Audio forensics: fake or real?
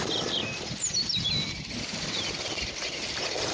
fake